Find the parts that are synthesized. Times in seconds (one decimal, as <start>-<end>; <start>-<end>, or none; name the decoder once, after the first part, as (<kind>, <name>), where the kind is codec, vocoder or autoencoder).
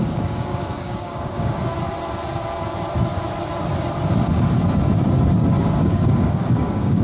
0.0-1.6 (codec, DAC); 5.8-7.0